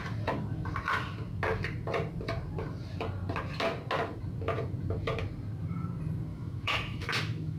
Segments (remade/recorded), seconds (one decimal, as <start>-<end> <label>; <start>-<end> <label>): 0.0-6.3 recorded; 6.3-7.6 remade